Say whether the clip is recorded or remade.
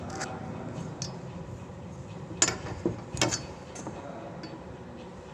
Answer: recorded